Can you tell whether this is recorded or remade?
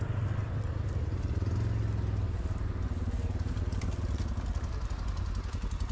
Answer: recorded